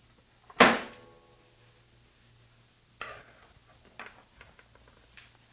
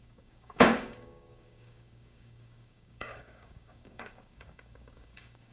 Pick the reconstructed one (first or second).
second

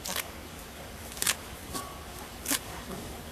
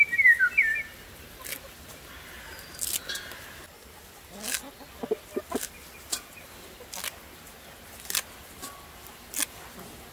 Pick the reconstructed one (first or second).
first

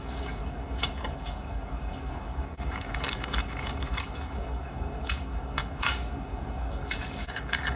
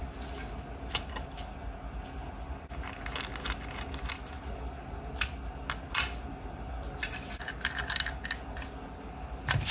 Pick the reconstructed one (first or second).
first